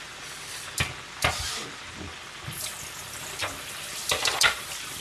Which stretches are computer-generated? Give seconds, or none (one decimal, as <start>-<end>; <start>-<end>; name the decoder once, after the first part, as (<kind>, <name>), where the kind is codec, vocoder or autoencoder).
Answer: 0.0-5.0 (vocoder, BigVGAN v2)